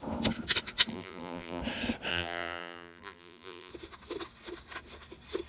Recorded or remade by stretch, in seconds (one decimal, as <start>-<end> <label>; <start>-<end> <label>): 0.0-0.9 recorded; 0.9-1.6 remade; 1.6-2.1 recorded; 2.1-3.7 remade; 3.7-5.5 recorded